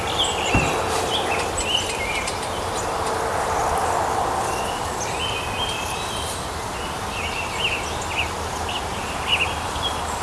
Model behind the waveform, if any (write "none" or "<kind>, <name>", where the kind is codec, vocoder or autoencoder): none